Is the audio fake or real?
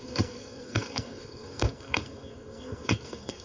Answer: fake